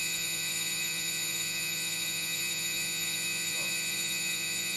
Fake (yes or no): yes